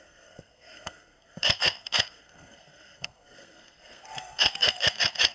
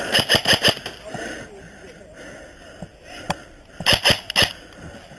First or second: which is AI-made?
first